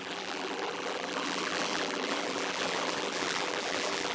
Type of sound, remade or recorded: remade